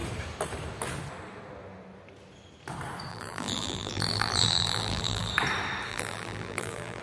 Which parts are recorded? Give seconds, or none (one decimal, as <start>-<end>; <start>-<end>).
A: 0.0-3.1; 5.3-5.9